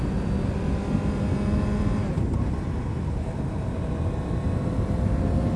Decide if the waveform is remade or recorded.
recorded